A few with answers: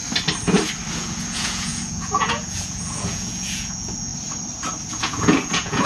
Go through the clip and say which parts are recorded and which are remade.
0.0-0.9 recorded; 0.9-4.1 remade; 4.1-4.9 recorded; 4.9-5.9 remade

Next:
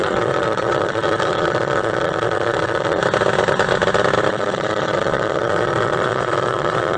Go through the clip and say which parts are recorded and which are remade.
0.0-3.0 remade; 3.0-4.3 recorded; 4.3-7.0 remade

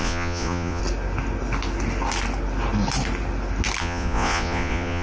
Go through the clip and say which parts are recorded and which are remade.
0.0-0.8 remade; 0.8-3.8 recorded; 3.8-5.0 remade

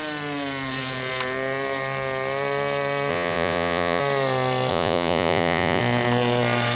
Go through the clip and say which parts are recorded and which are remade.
0.0-3.1 recorded; 3.1-4.0 remade; 4.0-4.7 recorded; 4.7-5.8 remade; 5.8-6.8 recorded

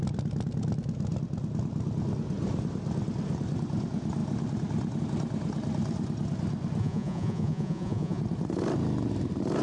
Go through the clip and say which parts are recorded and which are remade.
0.0-6.8 recorded; 6.8-8.2 remade; 8.2-9.6 recorded